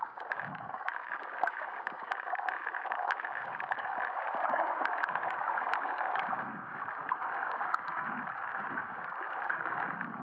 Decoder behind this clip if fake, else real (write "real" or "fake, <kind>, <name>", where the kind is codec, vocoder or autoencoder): fake, codec, DAC